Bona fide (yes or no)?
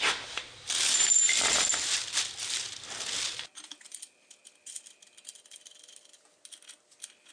yes